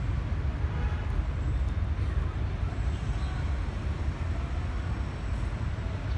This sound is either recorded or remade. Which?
recorded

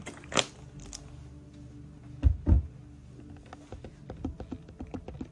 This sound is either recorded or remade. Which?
recorded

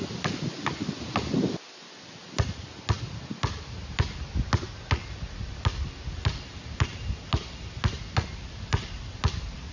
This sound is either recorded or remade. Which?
recorded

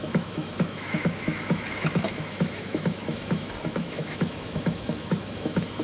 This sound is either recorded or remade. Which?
remade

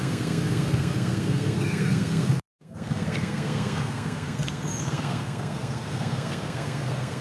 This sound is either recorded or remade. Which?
remade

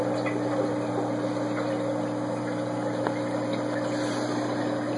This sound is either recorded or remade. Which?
recorded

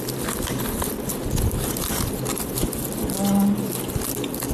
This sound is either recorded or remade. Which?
recorded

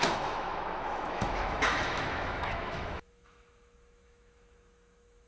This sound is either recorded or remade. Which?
remade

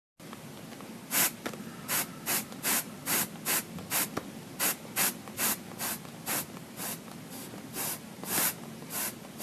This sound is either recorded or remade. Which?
recorded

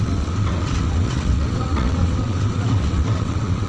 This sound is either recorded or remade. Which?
remade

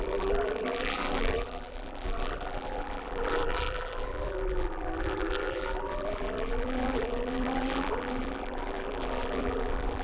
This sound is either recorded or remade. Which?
remade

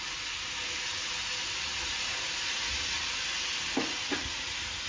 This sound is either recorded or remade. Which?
recorded